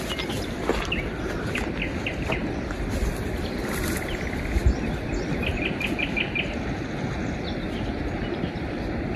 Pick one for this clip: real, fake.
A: real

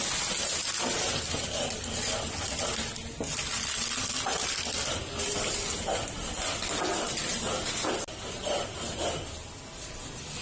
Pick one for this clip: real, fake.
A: real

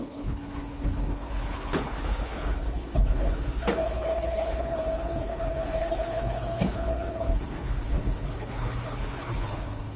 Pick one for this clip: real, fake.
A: fake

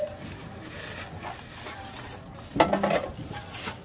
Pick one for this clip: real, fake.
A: real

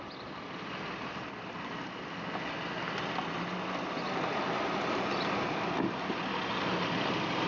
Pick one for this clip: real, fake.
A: real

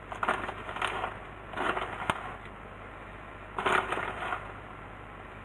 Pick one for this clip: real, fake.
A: real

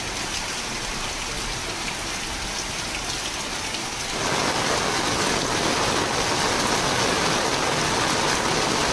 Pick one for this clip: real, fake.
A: real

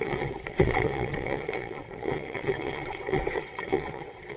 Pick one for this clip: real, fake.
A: fake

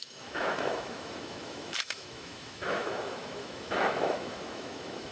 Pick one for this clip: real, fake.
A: fake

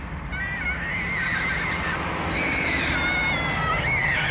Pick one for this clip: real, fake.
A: real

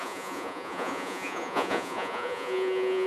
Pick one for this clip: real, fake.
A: fake